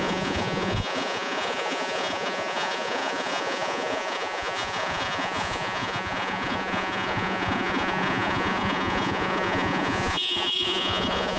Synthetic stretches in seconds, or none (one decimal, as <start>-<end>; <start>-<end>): 0.0-11.4